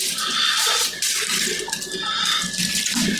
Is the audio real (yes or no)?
yes